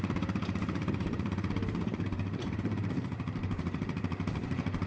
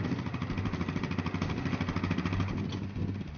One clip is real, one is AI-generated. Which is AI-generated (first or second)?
first